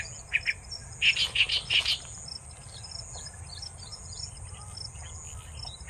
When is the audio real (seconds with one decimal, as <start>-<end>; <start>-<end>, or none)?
0.0-5.9